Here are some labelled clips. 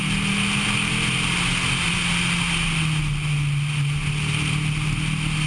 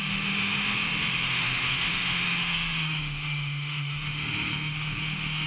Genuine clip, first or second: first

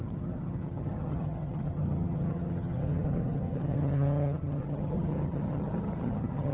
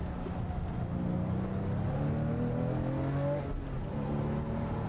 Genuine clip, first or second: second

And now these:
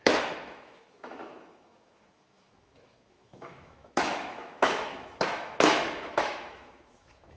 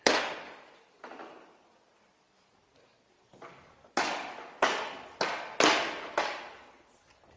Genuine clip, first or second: second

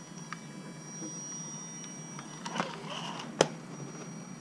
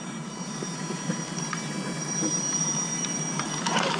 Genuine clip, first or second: first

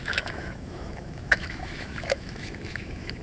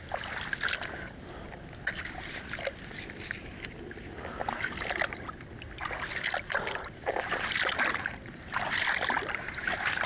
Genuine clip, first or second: second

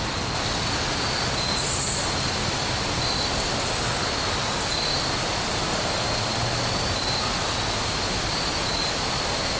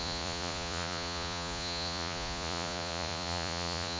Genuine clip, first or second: first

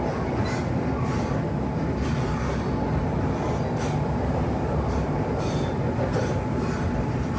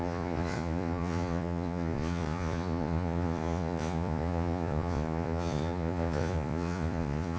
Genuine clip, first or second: first